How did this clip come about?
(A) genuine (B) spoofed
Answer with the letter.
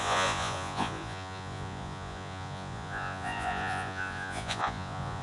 B